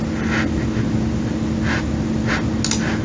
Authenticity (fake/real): real